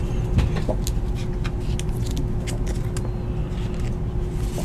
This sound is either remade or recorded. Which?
recorded